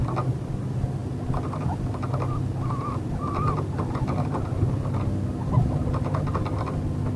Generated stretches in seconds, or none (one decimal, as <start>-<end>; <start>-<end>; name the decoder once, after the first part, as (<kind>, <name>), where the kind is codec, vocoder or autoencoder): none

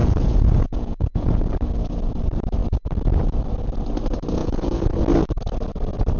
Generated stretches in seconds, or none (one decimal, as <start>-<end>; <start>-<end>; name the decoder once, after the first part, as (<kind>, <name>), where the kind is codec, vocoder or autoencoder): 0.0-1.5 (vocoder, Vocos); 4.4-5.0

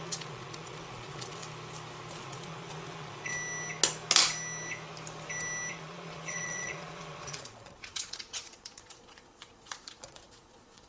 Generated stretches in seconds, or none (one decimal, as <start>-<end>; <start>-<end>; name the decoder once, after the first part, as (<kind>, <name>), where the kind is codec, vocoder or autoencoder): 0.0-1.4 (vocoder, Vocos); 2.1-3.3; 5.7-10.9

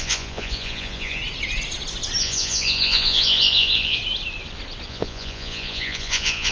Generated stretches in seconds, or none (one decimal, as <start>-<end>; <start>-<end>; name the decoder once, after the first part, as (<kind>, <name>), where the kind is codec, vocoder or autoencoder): 0.0-1.2 (vocoder, Vocos); 2.2-4.0; 4.9-6.5